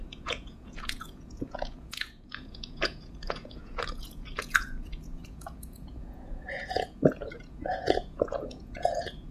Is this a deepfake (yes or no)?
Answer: yes